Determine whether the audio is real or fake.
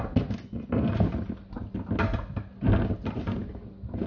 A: real